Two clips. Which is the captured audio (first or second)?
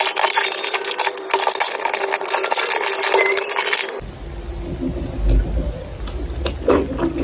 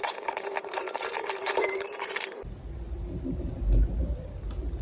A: first